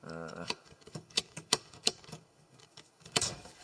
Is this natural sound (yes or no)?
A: no